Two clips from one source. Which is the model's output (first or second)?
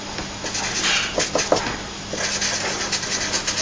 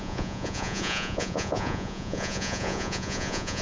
second